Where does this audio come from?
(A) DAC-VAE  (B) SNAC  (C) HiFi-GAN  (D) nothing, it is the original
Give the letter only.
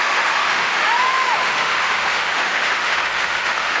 A